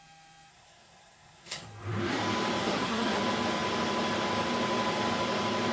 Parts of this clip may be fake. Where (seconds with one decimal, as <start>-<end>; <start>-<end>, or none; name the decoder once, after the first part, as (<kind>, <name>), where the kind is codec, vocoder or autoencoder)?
0.5-1.6 (codec, SNAC); 2.6-3.2